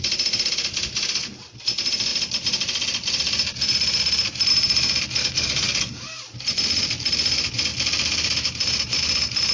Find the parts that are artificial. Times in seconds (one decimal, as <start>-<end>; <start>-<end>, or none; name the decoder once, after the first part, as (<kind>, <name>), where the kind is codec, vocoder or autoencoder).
5.2-6.1 (codec, DAC)